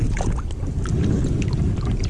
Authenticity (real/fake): real